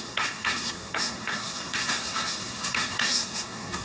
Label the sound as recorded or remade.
remade